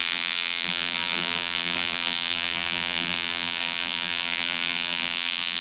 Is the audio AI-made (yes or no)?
yes